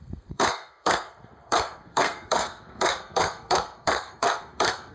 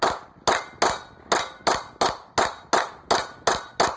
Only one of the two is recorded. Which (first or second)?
second